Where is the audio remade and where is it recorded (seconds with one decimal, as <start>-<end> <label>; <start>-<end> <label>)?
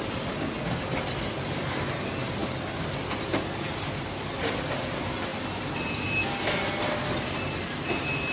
0.0-8.3 recorded